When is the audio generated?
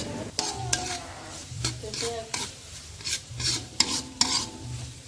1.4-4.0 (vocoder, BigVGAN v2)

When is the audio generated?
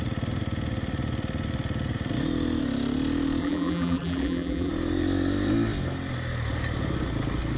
3.4-4.7 (vocoder, BigVGAN v2)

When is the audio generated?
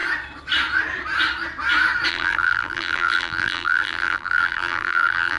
2.1-5.4 (vocoder, BigVGAN v2)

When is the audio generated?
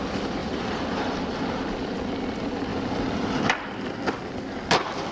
0.4-1.0 (vocoder, BigVGAN v2)